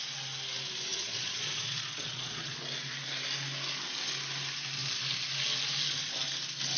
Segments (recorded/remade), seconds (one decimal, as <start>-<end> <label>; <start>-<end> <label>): 0.0-0.9 recorded; 0.9-2.6 remade; 2.6-6.8 recorded